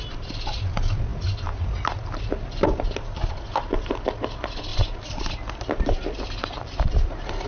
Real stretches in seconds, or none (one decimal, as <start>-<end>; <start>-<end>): 0.0-4.7; 5.2-6.4; 6.9-7.5